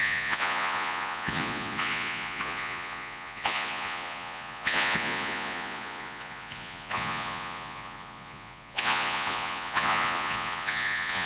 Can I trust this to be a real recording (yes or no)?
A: no